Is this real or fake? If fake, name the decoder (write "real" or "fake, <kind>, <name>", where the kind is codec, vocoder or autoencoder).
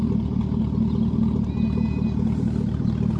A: real